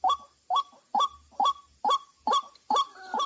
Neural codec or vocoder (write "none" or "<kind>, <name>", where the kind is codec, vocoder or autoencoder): none